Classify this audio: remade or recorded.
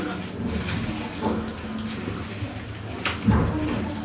recorded